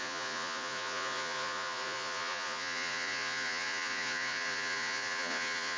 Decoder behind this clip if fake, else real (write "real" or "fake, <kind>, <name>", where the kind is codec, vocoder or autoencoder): fake, vocoder, Vocos